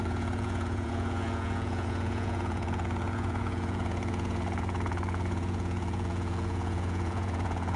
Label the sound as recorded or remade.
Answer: remade